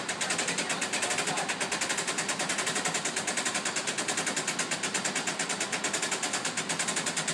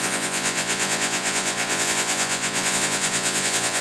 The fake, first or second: second